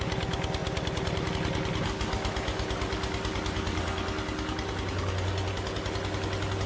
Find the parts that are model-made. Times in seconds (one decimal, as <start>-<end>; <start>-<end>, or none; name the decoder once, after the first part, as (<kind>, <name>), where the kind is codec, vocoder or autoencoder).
none